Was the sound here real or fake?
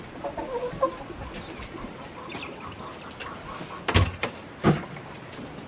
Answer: real